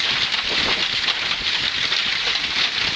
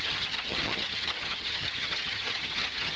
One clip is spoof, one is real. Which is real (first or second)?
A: first